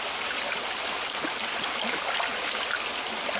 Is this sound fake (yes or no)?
no